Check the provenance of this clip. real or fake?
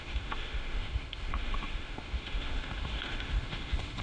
fake